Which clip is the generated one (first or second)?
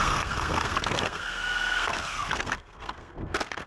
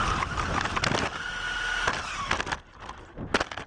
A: first